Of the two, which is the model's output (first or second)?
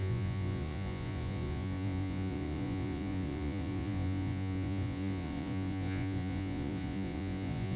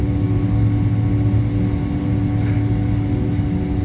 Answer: first